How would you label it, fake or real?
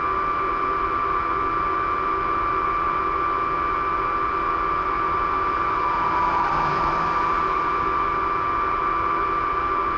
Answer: real